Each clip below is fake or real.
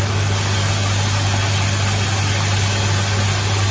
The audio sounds real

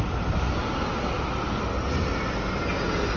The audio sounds real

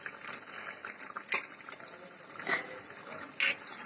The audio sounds real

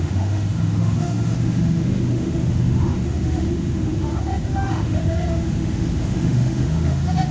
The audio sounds fake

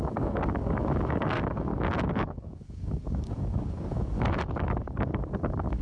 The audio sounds fake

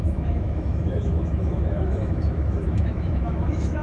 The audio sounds fake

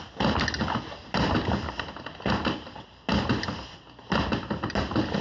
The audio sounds real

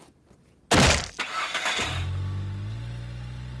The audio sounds real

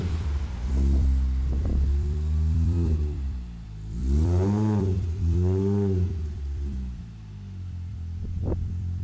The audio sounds fake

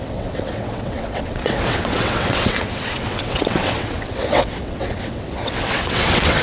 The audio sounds fake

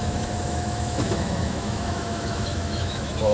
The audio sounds fake